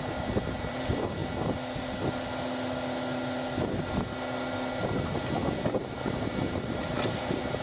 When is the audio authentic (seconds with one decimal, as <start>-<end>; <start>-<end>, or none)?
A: 1.2-4.8